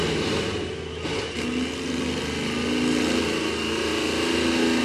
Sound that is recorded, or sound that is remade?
recorded